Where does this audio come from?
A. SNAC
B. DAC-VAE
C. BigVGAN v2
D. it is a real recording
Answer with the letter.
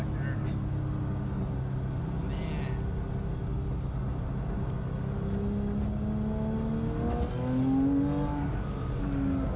D